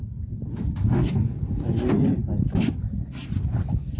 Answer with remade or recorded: recorded